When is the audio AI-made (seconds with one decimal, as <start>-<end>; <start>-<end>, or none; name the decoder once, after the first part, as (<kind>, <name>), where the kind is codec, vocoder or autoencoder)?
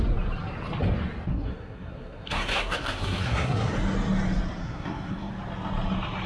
1.3-3.7 (codec, SNAC); 4.6-5.3